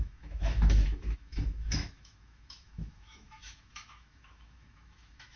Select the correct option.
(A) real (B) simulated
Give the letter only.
B